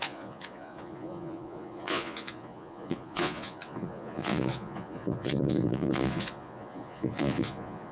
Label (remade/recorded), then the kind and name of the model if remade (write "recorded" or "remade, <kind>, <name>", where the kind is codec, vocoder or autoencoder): remade, vocoder, Vocos